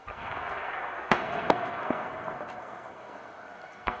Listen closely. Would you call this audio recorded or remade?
remade